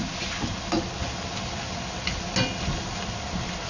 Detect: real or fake real